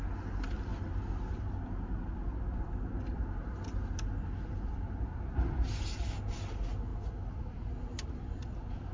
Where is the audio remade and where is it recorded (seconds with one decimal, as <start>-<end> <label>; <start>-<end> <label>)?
0.0-8.9 recorded